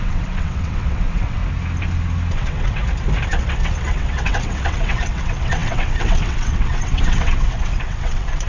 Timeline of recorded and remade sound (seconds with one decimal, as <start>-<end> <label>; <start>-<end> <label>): 0.0-1.4 remade; 1.4-2.3 recorded; 2.3-2.8 remade; 2.8-3.3 recorded; 3.3-8.5 remade